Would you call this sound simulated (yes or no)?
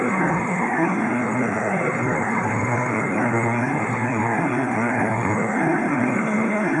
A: yes